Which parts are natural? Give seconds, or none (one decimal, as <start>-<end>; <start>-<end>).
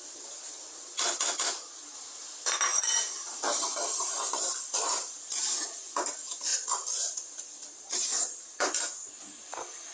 0.0-2.7; 5.4-9.9